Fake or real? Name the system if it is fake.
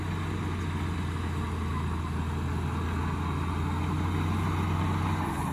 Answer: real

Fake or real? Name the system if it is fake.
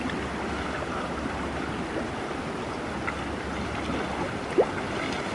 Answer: real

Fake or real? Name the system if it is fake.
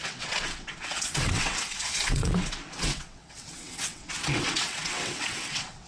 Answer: fake, vocoder, WaveNeXt